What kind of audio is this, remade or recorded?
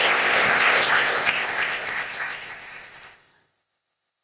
remade